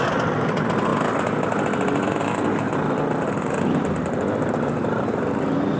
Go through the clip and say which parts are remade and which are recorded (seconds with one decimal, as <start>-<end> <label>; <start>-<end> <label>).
0.0-5.8 recorded